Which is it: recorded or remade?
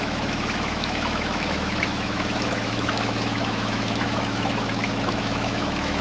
remade